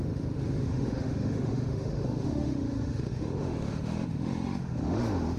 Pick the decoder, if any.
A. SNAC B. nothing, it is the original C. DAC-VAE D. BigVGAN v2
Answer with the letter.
C